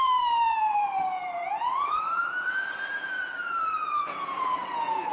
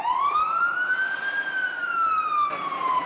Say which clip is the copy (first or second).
first